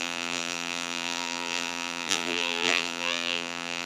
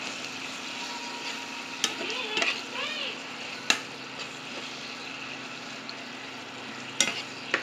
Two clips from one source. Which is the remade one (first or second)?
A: first